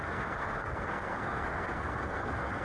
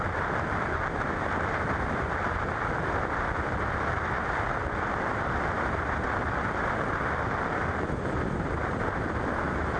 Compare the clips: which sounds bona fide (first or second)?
second